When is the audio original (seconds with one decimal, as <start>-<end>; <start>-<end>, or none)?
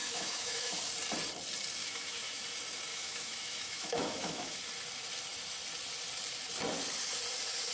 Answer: 0.8-1.8; 2.4-2.9; 4.6-7.7